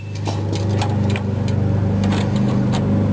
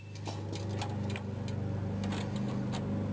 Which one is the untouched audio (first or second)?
second